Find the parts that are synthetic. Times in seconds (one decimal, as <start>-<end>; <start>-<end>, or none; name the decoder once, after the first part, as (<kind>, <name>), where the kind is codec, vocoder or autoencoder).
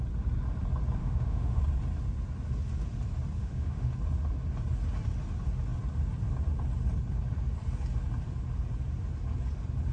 1.0-1.6 (autoencoder, DAC-VAE); 3.4-3.9